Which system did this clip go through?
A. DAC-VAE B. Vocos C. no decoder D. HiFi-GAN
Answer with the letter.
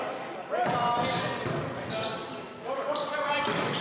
C